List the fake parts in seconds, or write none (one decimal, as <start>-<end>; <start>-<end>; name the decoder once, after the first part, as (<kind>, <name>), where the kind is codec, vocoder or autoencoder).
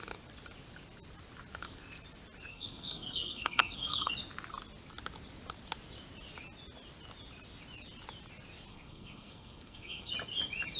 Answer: 2.5-4.1 (codec, SNAC); 8.7-10.1